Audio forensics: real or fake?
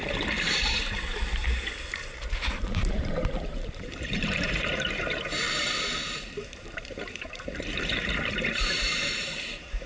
fake